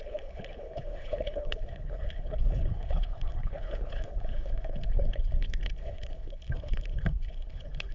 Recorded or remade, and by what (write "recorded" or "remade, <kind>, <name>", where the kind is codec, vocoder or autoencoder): remade, codec, HILCodec